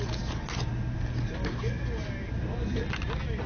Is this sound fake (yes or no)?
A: no